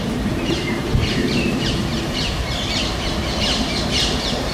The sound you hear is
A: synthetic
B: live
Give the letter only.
A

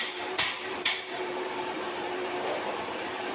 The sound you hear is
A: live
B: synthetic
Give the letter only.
B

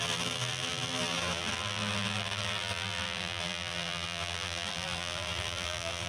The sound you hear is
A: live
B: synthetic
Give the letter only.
B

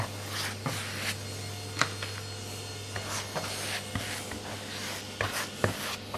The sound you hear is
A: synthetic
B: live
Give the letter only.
B